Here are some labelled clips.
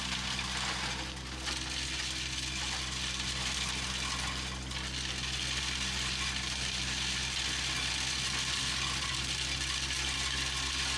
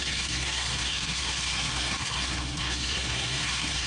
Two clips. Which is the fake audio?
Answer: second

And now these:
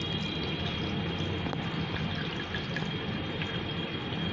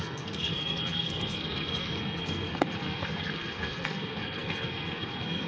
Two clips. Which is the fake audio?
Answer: second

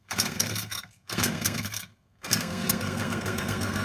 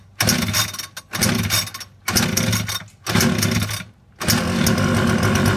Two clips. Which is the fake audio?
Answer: first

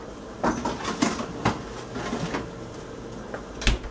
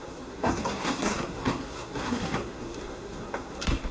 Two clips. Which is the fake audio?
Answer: second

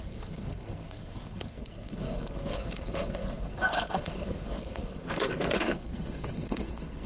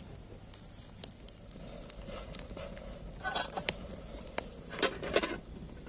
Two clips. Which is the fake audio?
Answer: first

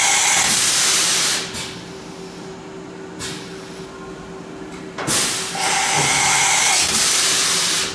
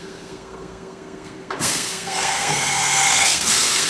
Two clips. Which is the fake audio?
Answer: second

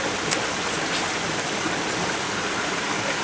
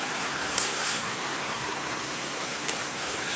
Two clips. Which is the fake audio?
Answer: second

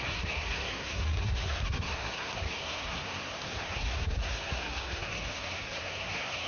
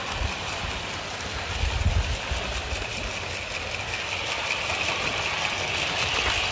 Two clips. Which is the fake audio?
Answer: first